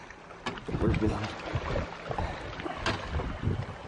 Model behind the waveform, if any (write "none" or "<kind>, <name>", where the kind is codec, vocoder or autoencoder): none